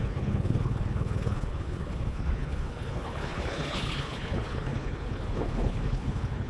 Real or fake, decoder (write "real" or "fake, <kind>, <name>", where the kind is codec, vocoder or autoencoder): fake, codec, HILCodec